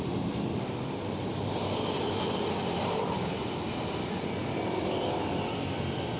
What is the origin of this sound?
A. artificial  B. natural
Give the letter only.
B